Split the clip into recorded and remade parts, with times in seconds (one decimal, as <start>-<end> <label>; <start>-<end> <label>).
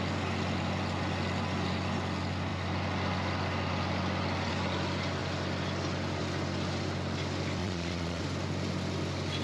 0.0-7.6 recorded; 7.6-8.2 remade; 8.2-9.4 recorded